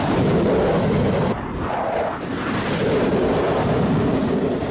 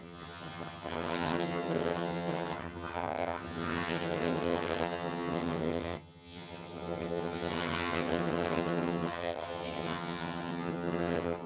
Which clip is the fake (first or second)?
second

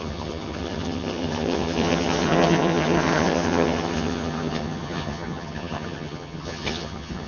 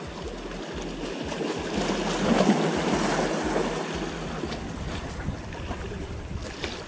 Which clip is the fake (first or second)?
first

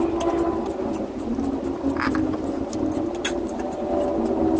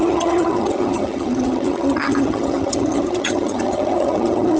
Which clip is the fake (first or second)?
second